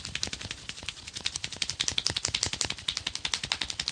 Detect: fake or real real